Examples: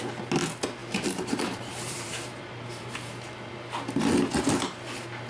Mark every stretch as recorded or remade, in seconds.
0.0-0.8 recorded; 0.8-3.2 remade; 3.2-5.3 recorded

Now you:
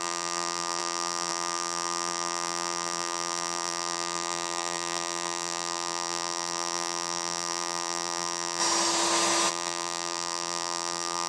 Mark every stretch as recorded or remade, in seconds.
0.0-8.6 remade; 8.6-9.5 recorded; 9.5-11.3 remade

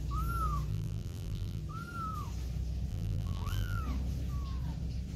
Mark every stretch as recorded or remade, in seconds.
0.0-0.7 recorded; 0.7-1.6 remade; 1.6-2.9 recorded; 2.9-3.8 remade; 3.8-5.2 recorded

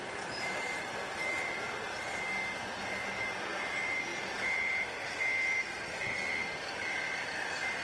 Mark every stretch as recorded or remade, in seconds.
0.0-0.8 remade; 0.8-7.8 recorded